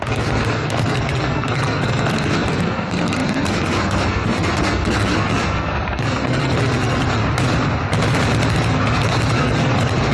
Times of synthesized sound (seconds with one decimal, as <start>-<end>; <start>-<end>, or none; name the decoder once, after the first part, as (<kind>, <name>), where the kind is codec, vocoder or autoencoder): 0.0-7.2 (codec, SNAC); 8.5-10.1